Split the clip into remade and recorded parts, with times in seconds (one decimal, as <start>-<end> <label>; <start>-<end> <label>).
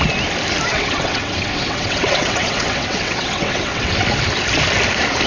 0.0-0.7 recorded; 0.7-3.9 remade; 3.9-5.3 recorded